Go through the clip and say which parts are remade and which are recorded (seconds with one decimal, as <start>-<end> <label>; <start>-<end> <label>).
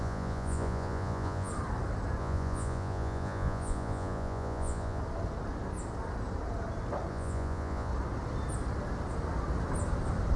0.0-1.5 remade; 1.5-2.2 recorded; 2.2-5.0 remade; 5.0-7.1 recorded; 7.1-7.9 remade; 7.9-10.4 recorded